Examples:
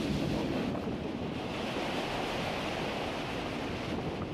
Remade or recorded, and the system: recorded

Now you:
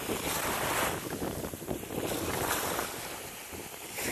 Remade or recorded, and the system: recorded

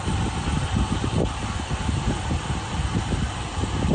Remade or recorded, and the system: recorded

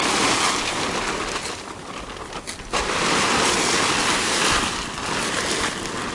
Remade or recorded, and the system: recorded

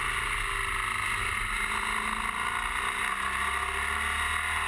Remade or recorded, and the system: recorded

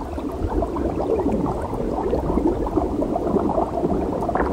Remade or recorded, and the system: recorded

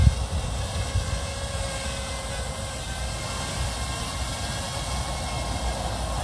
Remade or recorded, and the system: remade, vocoder, BigVGAN v2